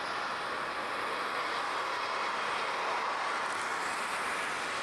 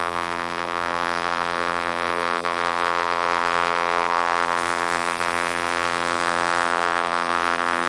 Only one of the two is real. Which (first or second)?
first